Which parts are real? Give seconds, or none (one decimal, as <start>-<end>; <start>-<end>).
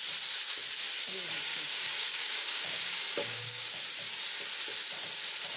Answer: 0.0-1.5; 3.8-5.6